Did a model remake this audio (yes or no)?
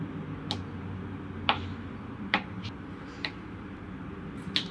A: no